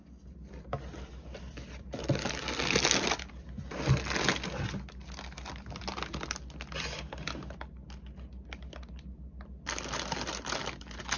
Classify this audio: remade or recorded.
recorded